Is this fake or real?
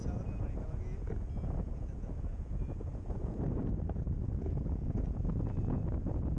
fake